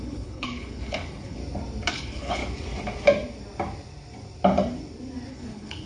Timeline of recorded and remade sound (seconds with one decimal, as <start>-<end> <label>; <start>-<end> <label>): 0.0-1.4 remade; 1.4-1.9 recorded; 1.9-2.4 remade; 2.4-5.3 recorded; 5.3-5.9 remade